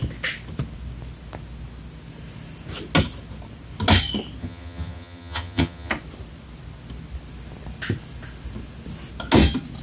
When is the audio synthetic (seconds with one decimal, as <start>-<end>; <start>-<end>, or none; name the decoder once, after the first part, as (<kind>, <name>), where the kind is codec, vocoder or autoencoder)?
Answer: 4.4-5.9 (vocoder, HiFi-GAN)